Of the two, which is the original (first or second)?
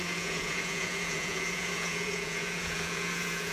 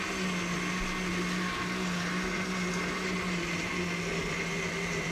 second